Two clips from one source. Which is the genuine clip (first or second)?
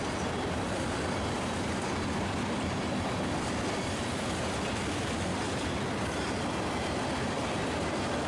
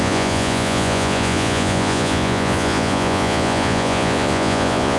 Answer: first